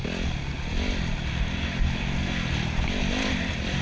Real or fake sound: real